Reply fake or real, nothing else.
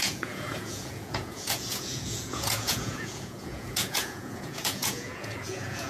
fake